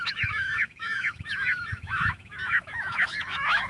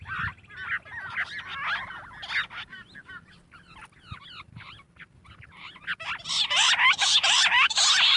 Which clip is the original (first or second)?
second